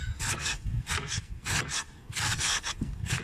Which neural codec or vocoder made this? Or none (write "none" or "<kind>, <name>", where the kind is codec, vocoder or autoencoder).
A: codec, SNAC